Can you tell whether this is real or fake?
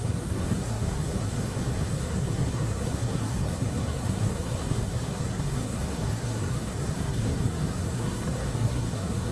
fake